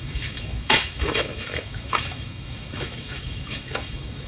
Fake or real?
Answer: fake